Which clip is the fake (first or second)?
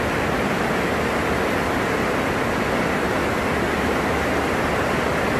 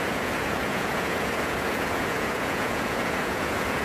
second